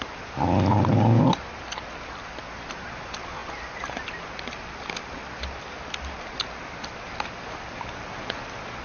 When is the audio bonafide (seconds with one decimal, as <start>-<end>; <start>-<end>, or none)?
0.0-8.8